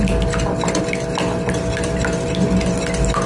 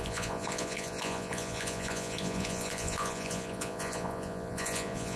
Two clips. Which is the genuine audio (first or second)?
first